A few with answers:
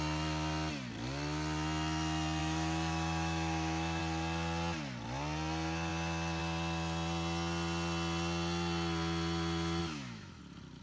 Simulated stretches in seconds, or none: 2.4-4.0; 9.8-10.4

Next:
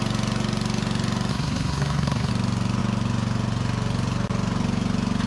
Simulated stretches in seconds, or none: 1.3-2.3

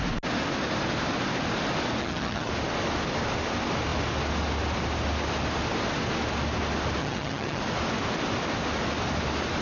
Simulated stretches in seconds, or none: 2.0-2.5; 7.0-7.6

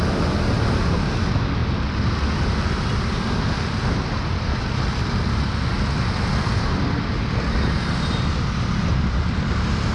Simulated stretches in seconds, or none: none

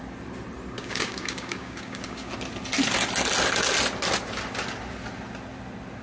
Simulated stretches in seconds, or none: 0.8-2.3